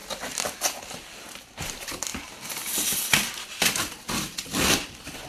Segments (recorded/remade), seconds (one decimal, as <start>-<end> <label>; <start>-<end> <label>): 0.0-0.8 recorded; 0.8-5.3 remade